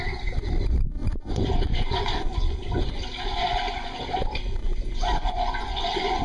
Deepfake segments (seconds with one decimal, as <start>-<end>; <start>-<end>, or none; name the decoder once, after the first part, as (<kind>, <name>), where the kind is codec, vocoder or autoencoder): 1.0-2.9 (vocoder, Vocos); 3.3-4.0; 4.6-6.2